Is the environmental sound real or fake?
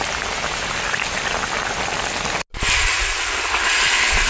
real